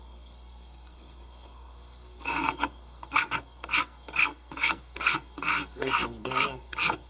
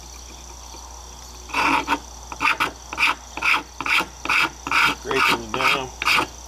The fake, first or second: first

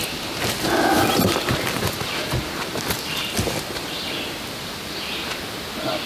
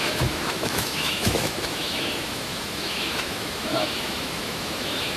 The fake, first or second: second